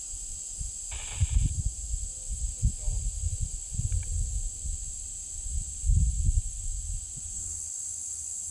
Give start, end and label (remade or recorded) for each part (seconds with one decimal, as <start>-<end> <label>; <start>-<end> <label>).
0.0-8.5 recorded